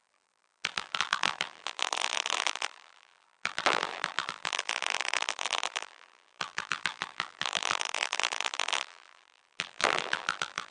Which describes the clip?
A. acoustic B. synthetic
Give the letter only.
B